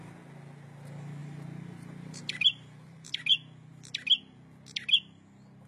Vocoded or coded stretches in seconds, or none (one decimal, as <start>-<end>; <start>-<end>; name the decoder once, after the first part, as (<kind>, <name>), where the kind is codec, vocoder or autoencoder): 1.2-3.1 (vocoder, BigVGAN v2)